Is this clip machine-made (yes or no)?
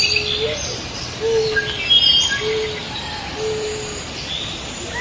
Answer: yes